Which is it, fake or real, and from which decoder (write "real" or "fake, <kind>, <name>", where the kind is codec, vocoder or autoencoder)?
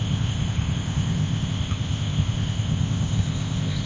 fake, codec, ZipCodec